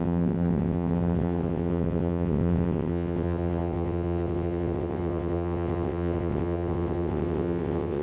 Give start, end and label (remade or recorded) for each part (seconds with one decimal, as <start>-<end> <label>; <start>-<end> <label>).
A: 0.0-8.0 remade